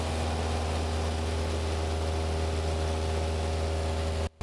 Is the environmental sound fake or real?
real